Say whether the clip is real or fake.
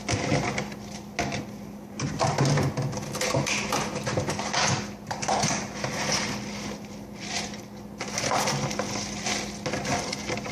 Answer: real